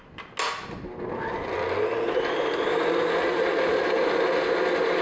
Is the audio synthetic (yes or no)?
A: no